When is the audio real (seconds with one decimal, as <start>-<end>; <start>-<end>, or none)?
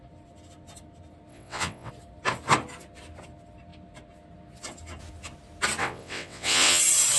0.0-1.3; 1.9-5.8; 6.8-7.2